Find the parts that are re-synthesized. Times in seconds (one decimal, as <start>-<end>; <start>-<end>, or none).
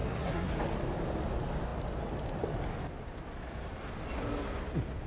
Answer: 0.0-0.5